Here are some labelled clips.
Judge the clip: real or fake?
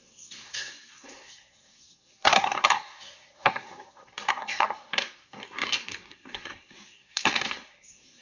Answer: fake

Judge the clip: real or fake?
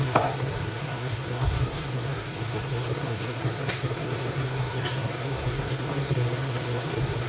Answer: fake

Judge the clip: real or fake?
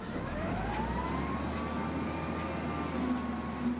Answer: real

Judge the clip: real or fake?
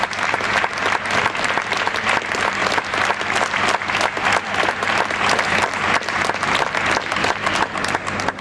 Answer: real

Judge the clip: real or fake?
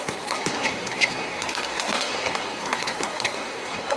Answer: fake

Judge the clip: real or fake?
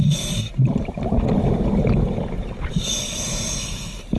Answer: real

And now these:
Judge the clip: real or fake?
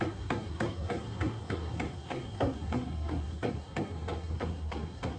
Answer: fake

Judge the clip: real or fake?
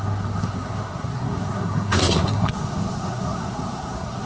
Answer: fake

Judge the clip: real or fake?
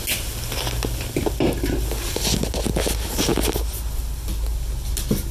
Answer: real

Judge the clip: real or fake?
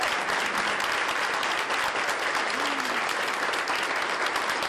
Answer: real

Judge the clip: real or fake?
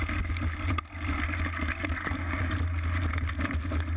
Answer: real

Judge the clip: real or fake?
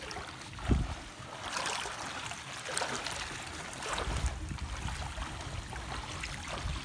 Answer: real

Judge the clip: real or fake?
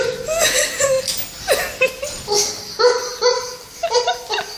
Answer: real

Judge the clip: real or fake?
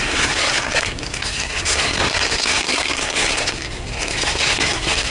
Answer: fake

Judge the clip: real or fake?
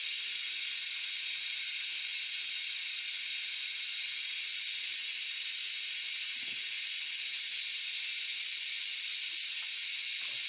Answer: real